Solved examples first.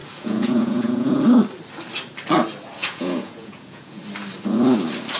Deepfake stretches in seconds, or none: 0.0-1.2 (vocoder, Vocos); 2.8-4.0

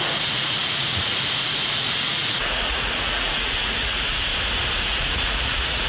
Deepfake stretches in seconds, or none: 0.0-4.3 (vocoder, Vocos); 4.8-5.9

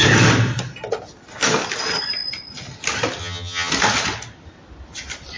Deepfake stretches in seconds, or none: 3.2-3.7 (vocoder, HiFi-GAN)